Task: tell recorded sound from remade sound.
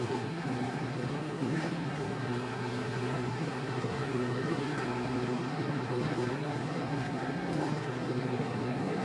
remade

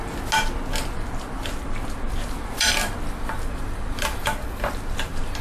recorded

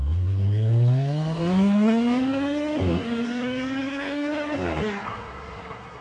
remade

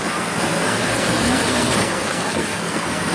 remade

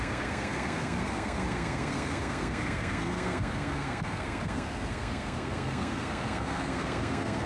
remade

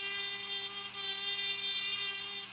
recorded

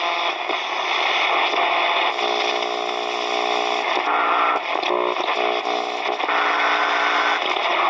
recorded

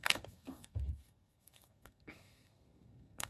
remade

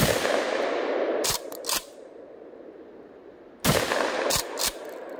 recorded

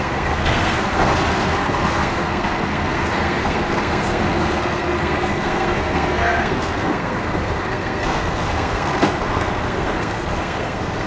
remade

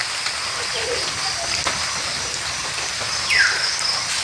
recorded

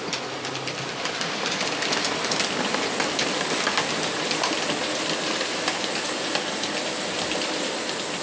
recorded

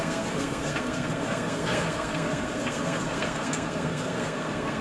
remade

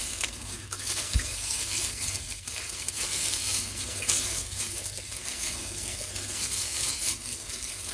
remade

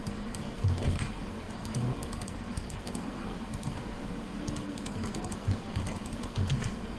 remade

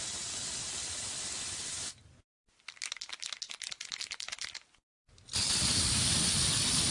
recorded